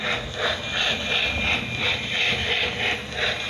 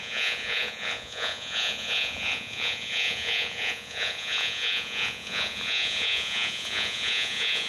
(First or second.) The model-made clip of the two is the second